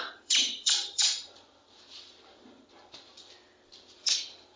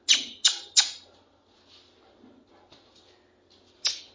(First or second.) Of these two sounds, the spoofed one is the first